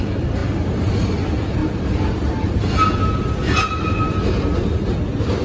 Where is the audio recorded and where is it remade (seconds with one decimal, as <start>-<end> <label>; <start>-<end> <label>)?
0.0-5.4 recorded

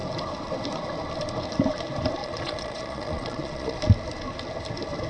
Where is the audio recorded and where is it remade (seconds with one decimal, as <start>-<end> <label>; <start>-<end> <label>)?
0.0-2.2 recorded; 2.2-3.8 remade; 3.8-5.1 recorded